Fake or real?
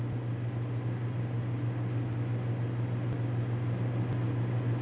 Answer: real